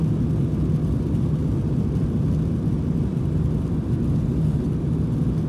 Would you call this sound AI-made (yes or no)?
no